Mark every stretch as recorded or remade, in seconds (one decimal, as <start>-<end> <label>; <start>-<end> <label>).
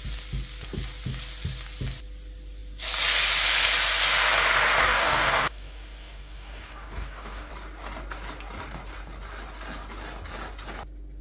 0.0-4.8 recorded; 4.8-7.5 remade; 7.5-11.2 recorded